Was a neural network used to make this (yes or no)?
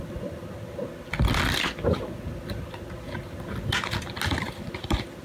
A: no